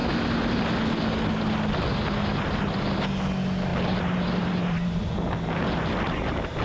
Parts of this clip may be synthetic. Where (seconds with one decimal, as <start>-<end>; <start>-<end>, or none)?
3.7-5.0

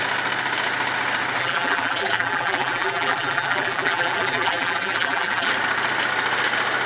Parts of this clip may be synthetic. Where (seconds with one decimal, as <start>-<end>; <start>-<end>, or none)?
1.4-5.5

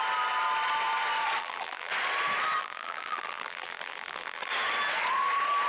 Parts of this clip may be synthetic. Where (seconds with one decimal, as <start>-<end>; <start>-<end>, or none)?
1.4-1.9; 2.6-4.5

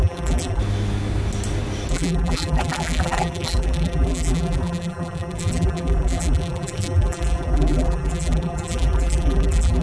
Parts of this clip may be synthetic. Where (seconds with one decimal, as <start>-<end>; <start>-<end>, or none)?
0.0-0.6; 1.9-9.8

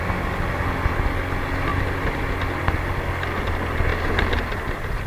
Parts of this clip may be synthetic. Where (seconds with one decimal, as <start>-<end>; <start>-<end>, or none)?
none

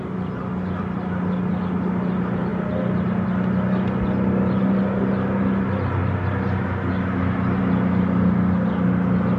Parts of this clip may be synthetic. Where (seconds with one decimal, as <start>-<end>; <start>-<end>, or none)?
none